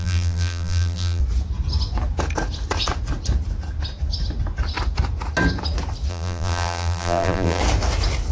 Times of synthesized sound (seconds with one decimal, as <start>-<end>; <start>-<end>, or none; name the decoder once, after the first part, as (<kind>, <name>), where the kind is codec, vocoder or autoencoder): 0.0-1.2 (vocoder, BigVGAN v2); 6.1-7.6